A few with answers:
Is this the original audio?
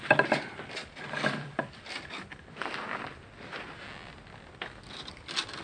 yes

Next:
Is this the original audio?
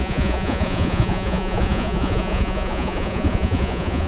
no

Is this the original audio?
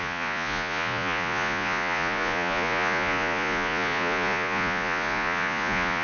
no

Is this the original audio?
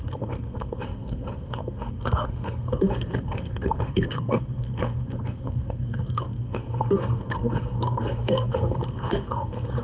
no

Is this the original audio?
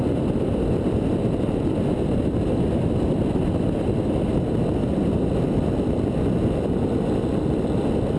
yes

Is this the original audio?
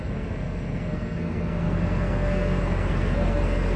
no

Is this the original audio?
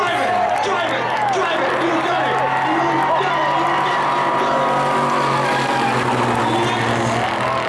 yes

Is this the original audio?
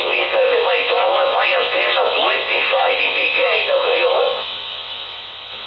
no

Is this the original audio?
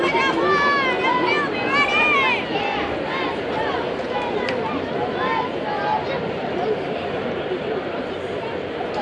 yes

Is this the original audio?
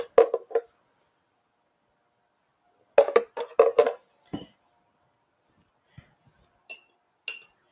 yes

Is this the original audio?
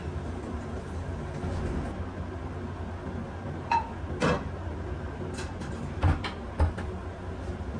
yes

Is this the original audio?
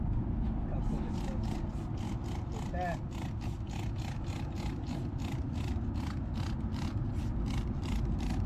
yes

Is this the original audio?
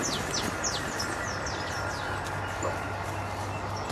yes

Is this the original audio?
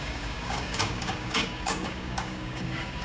no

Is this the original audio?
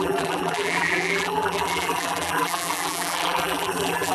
no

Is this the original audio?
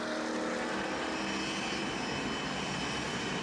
yes